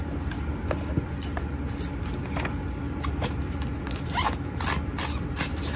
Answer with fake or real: real